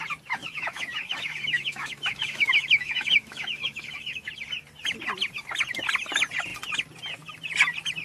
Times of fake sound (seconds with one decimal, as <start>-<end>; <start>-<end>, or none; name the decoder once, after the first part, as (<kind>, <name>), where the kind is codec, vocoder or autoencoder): 0.4-4.3 (autoencoder, DAC-VAE)

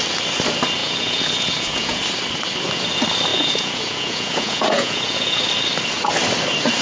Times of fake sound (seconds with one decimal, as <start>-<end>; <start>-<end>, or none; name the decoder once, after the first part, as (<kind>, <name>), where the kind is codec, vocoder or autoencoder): 0.8-2.0 (vocoder, Vocos); 3.3-5.5